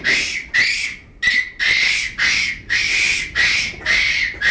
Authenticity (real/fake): real